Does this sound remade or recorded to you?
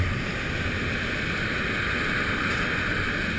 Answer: recorded